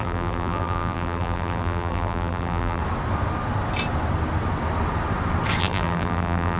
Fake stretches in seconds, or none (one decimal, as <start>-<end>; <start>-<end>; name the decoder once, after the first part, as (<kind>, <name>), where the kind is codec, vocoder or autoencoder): 0.0-2.8 (vocoder, BigVGAN v2); 5.6-6.6